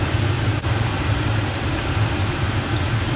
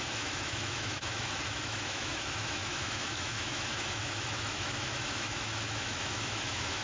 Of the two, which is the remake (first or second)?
second